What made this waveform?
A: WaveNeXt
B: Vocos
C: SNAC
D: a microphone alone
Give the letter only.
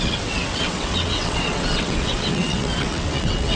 A